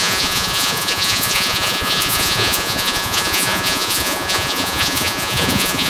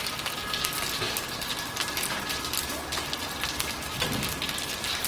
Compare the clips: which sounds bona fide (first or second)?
second